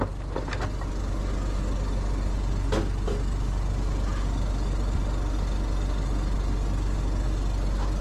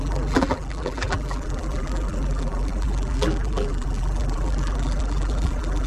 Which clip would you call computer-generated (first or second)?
second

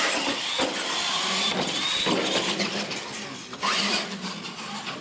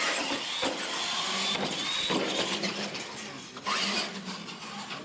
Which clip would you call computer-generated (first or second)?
first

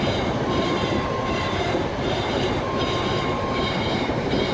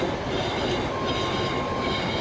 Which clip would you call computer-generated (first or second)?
first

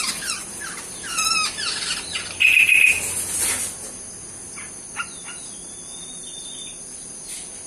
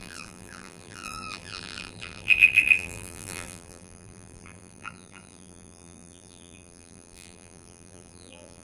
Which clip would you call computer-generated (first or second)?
second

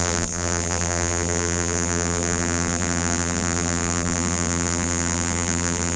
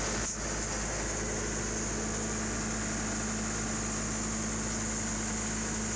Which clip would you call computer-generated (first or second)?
first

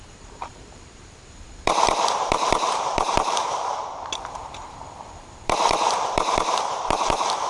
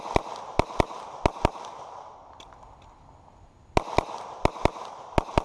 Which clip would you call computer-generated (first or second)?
first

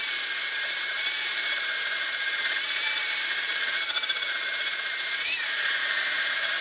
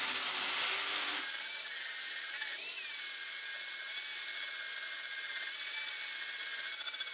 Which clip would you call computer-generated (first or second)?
first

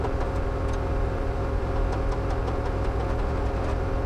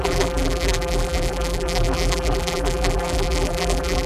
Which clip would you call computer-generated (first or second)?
second